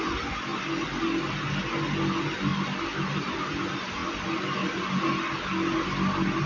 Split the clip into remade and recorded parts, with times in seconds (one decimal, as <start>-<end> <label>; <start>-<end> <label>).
0.0-6.5 recorded